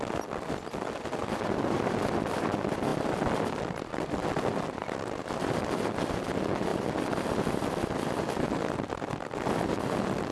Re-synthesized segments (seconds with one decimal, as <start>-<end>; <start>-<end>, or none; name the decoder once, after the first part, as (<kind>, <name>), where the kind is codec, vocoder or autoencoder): 1.2-1.9 (vocoder, BigVGAN v2); 2.9-6.0; 6.7-9.1